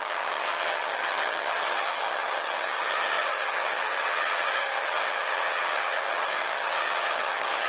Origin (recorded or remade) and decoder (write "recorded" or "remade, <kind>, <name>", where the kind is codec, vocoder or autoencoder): remade, vocoder, HiFi-GAN